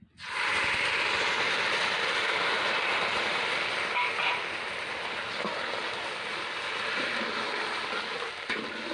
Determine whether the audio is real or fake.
real